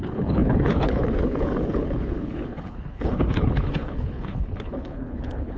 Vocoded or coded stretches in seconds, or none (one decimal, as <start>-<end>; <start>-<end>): 0.0-5.6